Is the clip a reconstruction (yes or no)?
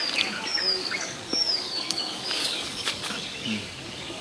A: yes